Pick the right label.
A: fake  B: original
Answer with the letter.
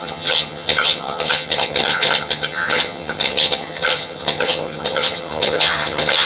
A